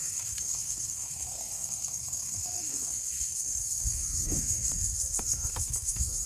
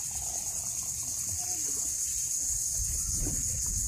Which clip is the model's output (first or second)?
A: first